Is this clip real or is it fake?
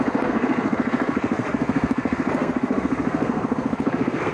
fake